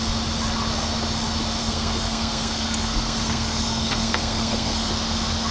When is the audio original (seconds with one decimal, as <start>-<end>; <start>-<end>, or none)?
0.0-1.6; 4.9-5.5